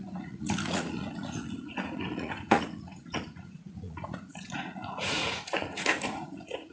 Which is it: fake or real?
fake